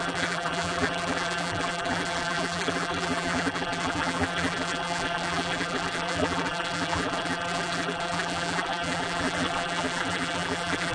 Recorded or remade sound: remade